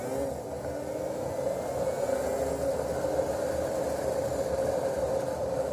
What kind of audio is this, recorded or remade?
recorded